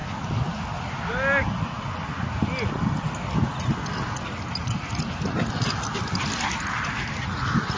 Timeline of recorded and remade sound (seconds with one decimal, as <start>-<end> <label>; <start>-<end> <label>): 0.0-7.8 recorded